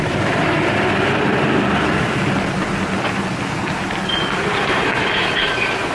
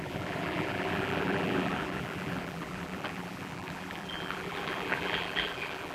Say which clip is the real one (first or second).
first